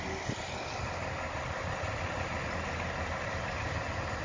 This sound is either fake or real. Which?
real